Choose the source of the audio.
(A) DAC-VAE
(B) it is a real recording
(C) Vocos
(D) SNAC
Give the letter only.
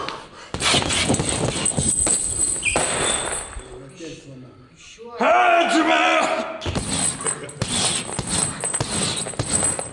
B